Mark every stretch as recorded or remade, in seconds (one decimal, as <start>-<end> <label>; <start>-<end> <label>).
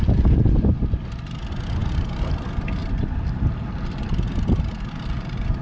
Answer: 0.0-5.6 recorded